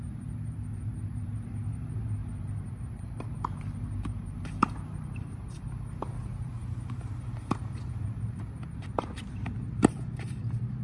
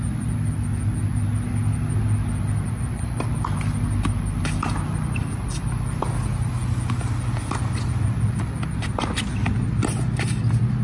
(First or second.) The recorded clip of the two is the second